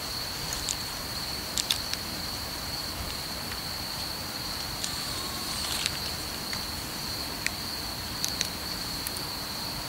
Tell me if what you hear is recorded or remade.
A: remade